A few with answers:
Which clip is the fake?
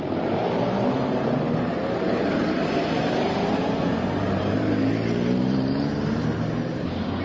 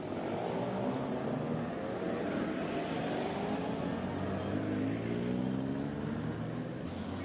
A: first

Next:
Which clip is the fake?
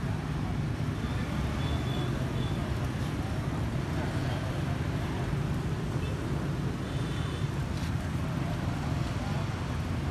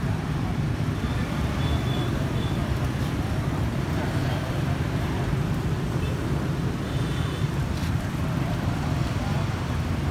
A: second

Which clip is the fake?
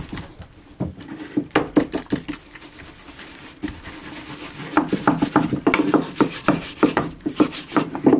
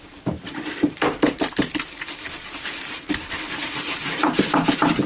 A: second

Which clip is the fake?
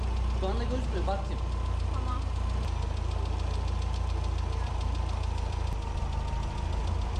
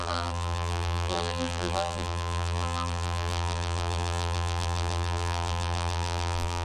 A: second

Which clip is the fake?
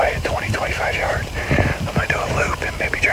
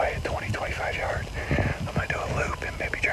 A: first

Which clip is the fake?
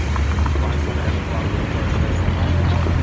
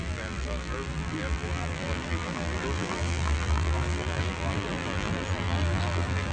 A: second